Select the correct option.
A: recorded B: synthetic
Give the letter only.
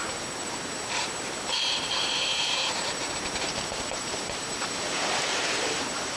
B